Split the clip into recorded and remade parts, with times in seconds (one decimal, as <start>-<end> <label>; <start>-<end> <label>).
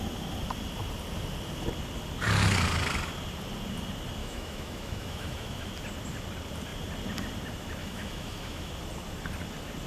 0.0-4.2 recorded; 4.2-5.7 remade; 5.7-7.8 recorded; 7.8-8.7 remade; 8.7-9.9 recorded